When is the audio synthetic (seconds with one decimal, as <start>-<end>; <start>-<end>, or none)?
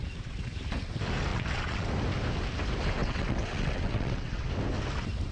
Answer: 1.3-1.9; 3.0-4.5